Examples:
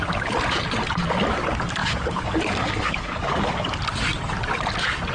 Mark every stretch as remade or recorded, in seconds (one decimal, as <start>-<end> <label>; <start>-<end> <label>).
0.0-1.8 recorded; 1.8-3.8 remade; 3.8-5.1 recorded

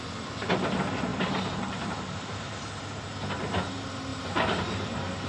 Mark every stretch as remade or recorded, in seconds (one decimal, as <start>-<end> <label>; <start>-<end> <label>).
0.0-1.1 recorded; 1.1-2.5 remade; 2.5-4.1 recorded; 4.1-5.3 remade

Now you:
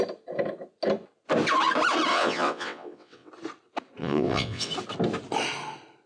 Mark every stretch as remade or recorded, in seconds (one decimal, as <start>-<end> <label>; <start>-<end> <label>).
0.0-2.1 recorded; 2.1-3.3 remade; 3.3-4.0 recorded; 4.0-4.7 remade; 4.7-6.1 recorded

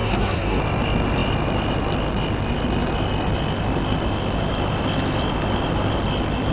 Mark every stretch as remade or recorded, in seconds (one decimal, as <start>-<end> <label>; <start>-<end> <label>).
0.0-0.6 remade; 0.6-6.5 recorded

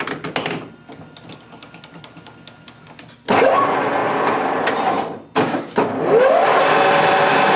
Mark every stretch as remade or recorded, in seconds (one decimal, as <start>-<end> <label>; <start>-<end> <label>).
0.0-7.6 recorded